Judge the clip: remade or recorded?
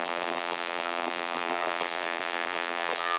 remade